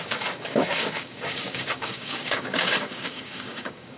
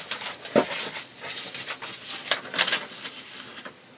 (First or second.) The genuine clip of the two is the second